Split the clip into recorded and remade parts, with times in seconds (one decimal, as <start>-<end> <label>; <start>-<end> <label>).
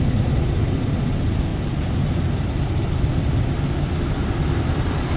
0.0-1.5 recorded; 1.5-2.9 remade; 2.9-5.2 recorded